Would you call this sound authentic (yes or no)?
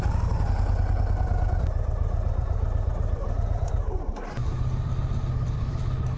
no